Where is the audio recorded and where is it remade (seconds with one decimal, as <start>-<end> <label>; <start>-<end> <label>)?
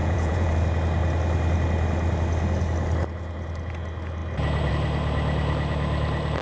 0.0-0.5 remade; 0.5-6.4 recorded